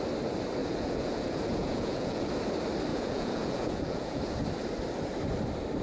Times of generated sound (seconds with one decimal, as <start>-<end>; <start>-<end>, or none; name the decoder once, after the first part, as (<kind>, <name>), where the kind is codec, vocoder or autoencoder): 0.6-2.2 (vocoder, Vocos); 2.9-4.2